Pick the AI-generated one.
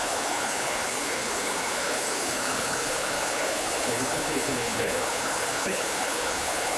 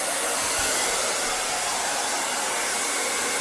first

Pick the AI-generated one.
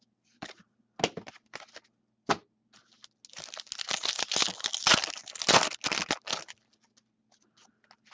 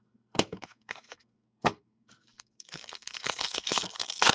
second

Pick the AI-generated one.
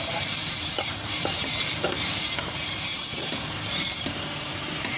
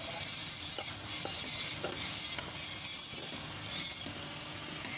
first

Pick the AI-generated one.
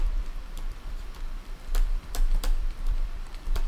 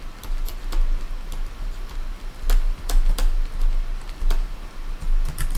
first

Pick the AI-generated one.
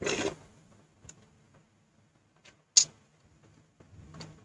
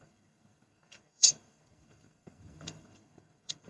second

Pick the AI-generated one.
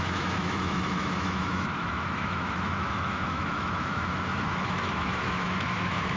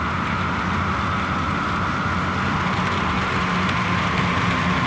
first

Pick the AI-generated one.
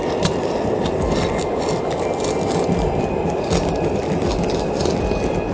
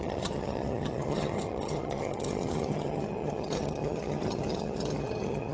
second